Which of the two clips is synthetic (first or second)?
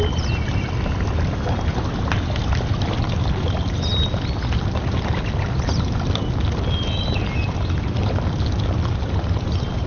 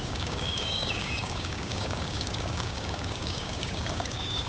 second